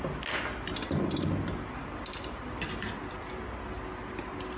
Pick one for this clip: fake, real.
real